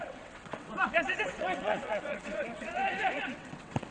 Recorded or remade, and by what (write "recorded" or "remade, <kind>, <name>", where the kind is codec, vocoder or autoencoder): remade, vocoder, WaveNeXt